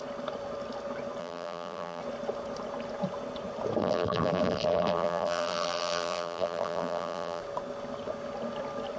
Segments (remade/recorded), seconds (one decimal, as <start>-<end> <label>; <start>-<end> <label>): 0.0-1.2 recorded; 1.2-2.0 remade; 2.0-3.8 recorded; 3.8-7.4 remade; 7.4-9.0 recorded